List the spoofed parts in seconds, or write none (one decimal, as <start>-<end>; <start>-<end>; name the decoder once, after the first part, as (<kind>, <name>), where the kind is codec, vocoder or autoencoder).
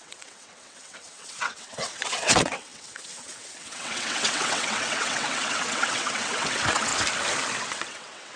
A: 0.0-6.9 (vocoder, WaveNeXt); 7.6-8.4